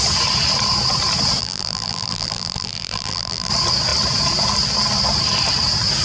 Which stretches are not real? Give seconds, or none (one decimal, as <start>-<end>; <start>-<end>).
1.4-3.5